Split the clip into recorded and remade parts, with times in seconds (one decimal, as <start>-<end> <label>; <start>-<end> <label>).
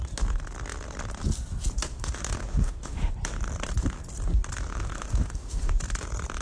0.0-1.9 recorded; 1.9-3.1 remade; 3.1-4.7 recorded; 4.7-5.7 remade; 5.7-6.4 recorded